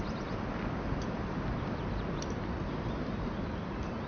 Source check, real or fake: real